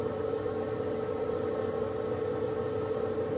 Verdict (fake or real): real